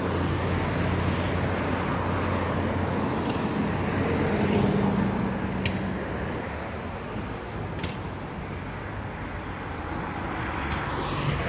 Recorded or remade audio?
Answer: recorded